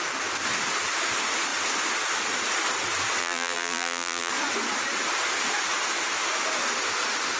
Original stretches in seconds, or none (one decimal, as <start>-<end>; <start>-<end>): 0.0-3.2; 4.3-7.4